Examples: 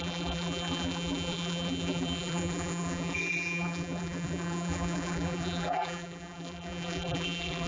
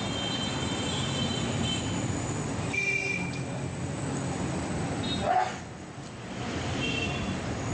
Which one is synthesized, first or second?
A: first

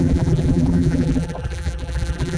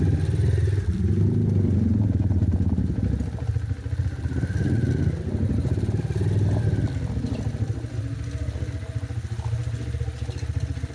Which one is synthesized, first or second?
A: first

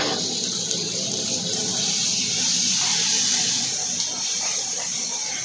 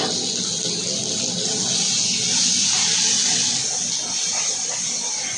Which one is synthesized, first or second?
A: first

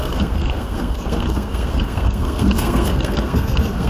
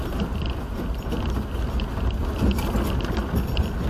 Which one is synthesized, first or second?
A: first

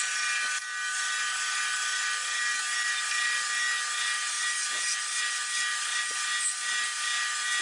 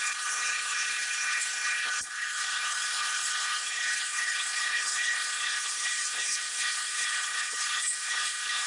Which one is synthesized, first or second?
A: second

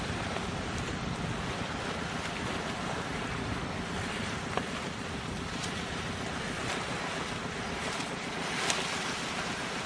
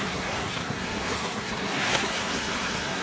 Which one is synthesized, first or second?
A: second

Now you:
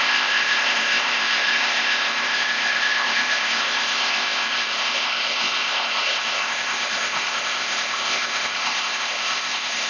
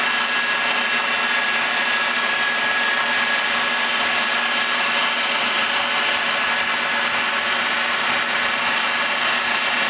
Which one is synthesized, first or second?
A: first